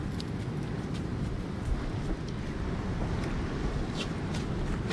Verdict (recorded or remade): recorded